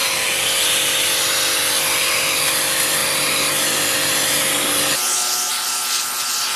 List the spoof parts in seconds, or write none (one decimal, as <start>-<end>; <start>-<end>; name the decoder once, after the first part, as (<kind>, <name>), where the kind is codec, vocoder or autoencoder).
none